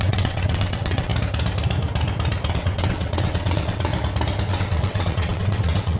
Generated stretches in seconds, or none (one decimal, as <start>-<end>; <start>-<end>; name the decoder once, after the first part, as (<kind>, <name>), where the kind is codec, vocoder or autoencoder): 0.0-1.1 (vocoder, WaveNeXt); 2.5-3.9; 4.5-6.0